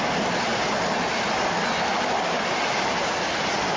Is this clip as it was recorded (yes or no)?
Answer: yes